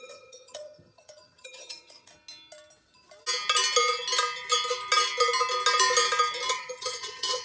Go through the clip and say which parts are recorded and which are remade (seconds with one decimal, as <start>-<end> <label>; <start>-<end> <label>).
0.0-2.1 remade; 2.1-6.5 recorded; 6.5-7.4 remade